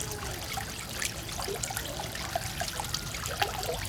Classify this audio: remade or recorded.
recorded